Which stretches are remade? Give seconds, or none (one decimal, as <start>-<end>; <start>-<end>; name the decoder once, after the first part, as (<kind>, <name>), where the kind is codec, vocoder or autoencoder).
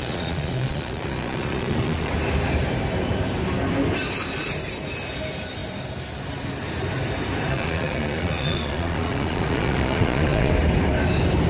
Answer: 0.0-2.1 (vocoder, Vocos); 7.5-10.5